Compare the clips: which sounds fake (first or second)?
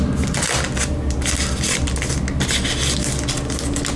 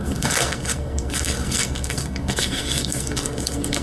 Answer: second